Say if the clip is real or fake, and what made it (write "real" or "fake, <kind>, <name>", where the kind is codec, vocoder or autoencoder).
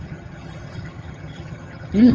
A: fake, vocoder, HiFi-GAN